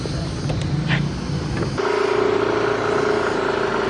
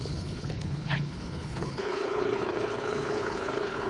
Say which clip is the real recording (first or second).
first